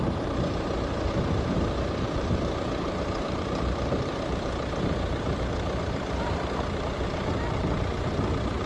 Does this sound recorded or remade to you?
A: remade